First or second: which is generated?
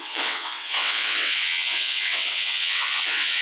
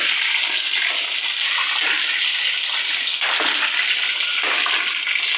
first